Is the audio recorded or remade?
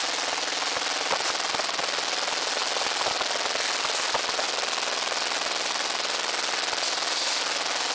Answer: recorded